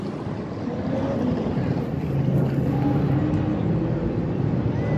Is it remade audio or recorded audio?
recorded